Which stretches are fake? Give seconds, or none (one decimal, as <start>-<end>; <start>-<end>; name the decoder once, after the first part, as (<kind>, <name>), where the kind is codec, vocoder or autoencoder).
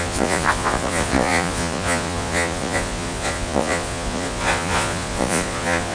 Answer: 0.0-5.9 (vocoder, Vocos)